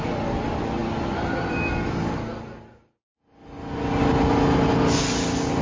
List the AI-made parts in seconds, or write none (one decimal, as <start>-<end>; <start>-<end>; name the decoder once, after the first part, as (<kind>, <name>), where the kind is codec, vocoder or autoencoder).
none